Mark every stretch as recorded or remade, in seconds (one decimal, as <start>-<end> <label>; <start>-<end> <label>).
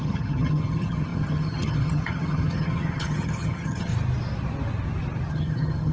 0.0-3.9 remade; 3.9-5.3 recorded; 5.3-5.9 remade